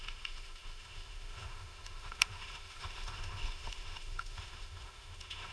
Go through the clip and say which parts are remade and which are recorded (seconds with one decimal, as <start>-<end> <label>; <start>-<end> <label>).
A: 0.0-5.5 remade